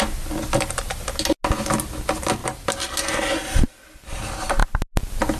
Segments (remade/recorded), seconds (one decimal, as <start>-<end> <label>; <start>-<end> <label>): 0.0-5.4 recorded